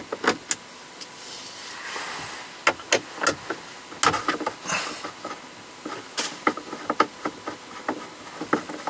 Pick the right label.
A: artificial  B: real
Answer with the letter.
B